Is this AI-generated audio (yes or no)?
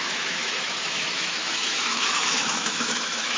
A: yes